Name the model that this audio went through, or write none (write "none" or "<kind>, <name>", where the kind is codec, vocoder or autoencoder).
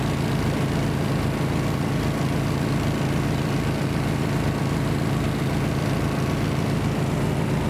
none